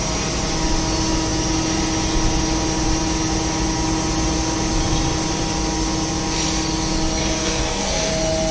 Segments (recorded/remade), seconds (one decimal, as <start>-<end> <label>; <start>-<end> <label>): 0.0-7.4 recorded; 7.4-8.1 remade; 8.1-8.5 recorded